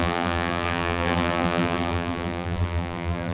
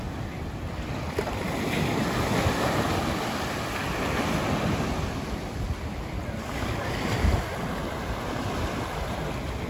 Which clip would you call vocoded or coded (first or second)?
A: first